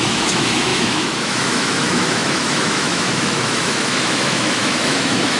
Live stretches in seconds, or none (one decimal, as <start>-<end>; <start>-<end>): none